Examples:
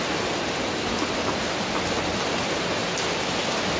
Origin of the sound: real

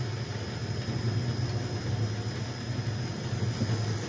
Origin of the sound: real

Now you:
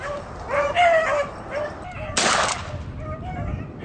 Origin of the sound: real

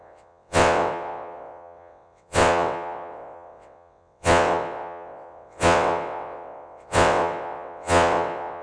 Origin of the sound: fake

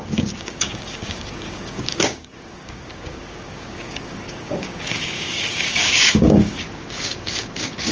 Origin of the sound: fake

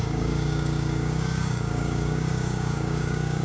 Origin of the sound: fake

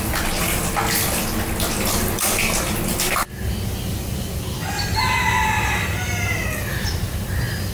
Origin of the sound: real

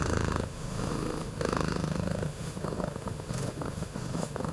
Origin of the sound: fake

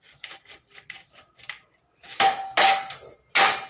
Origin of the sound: real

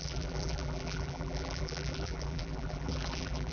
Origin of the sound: fake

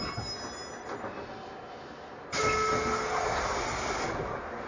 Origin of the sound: real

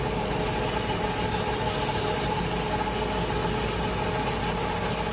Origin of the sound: real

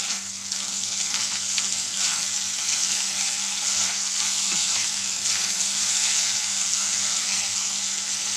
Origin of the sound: fake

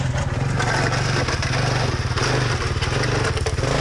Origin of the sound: real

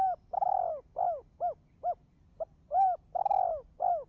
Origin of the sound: real